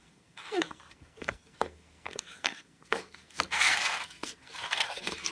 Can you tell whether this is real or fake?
fake